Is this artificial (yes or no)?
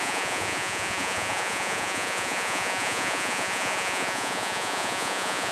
yes